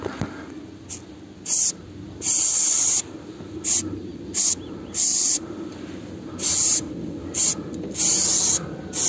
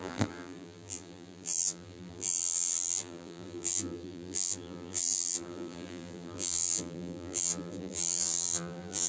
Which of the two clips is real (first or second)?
first